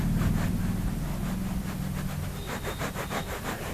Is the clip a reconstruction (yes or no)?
no